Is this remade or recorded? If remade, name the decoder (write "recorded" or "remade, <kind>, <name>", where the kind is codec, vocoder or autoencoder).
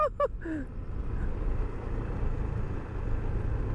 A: recorded